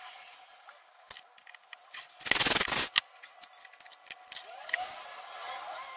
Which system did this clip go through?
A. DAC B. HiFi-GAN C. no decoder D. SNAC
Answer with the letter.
C